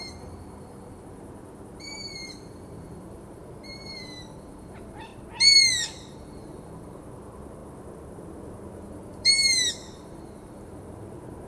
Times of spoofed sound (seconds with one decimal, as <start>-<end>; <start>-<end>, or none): 0.0-5.1; 6.2-11.5